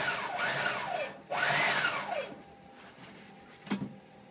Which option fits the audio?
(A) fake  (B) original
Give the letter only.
B